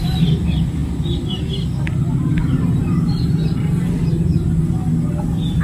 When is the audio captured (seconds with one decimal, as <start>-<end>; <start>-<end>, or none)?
0.0-5.6